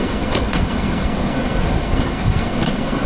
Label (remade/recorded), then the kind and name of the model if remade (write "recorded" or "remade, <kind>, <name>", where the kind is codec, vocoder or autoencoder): remade, codec, SNAC